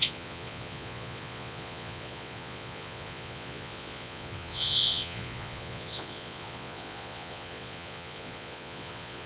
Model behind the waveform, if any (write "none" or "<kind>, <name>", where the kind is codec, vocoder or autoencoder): vocoder, Vocos